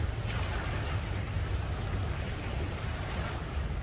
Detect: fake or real real